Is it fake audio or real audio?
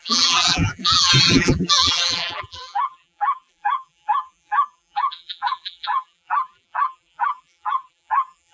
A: fake